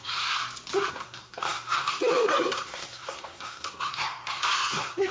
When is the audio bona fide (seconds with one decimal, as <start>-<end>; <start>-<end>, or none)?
0.4-0.9